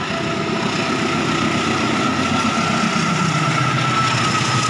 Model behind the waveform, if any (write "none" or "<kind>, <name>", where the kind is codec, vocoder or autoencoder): none